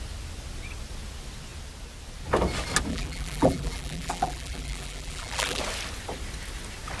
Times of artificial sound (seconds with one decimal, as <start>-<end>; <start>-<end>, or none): 2.9-5.6